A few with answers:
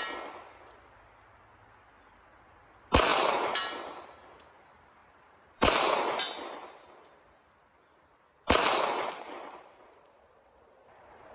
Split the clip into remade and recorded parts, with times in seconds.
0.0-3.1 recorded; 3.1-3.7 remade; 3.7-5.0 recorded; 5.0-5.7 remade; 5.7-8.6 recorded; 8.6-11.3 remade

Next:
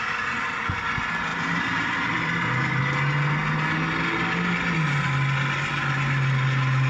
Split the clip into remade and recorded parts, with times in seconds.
0.0-1.3 recorded; 1.3-2.8 remade; 2.8-6.9 recorded